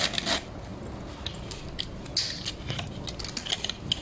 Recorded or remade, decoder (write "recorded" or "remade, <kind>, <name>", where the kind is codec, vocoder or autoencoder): recorded